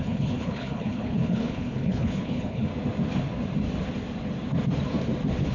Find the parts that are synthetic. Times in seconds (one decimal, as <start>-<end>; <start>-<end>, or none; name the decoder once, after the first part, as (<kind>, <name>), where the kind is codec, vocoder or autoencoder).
0.0-2.7 (codec, HILCodec)